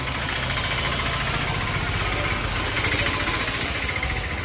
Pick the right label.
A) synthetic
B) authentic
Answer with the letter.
B